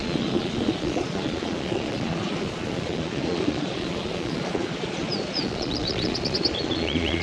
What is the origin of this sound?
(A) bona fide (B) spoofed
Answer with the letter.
B